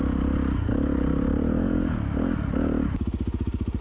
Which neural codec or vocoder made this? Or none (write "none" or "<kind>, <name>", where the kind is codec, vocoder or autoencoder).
none